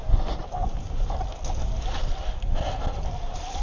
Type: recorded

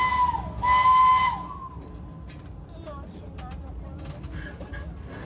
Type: recorded